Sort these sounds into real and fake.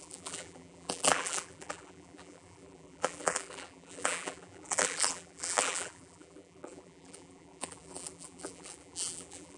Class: fake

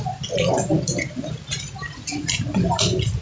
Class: real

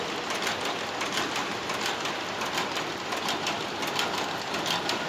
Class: fake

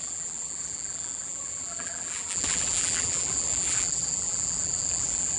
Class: fake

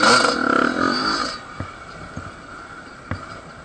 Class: real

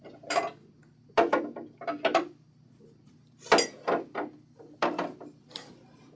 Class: real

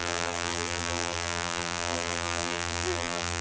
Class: fake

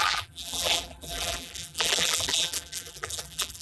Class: fake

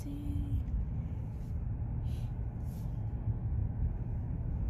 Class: real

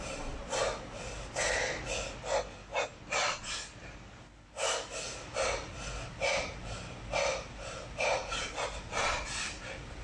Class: real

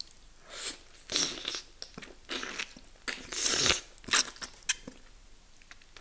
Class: real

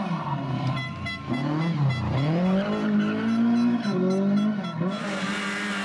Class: real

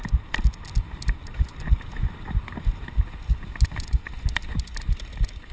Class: real